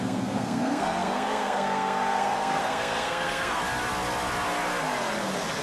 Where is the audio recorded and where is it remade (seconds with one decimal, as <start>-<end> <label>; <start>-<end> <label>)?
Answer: 0.0-3.6 remade; 3.6-5.6 recorded